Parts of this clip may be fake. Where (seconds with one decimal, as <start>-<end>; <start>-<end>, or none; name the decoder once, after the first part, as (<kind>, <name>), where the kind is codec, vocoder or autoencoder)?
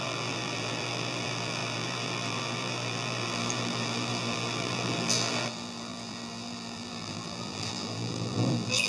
0.0-8.9 (vocoder, BigVGAN v2)